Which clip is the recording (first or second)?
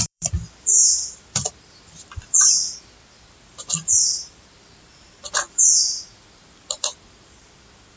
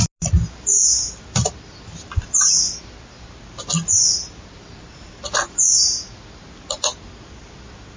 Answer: second